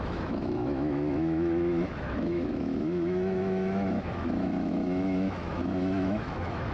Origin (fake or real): fake